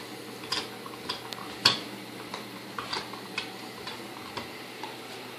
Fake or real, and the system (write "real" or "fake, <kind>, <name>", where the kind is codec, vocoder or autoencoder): real